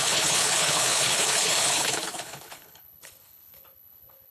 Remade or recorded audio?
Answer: remade